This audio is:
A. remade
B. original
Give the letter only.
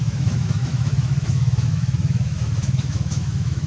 A